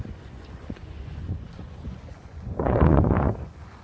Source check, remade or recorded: remade